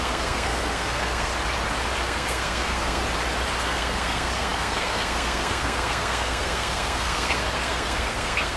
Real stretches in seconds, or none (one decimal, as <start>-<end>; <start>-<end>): 1.3-2.0; 3.0-3.6